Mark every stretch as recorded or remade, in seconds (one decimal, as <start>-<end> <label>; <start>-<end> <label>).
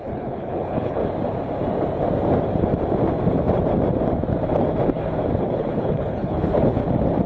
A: 0.0-1.0 remade; 1.0-5.4 recorded; 5.4-6.8 remade; 6.8-7.3 recorded